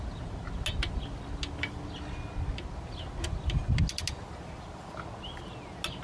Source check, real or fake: real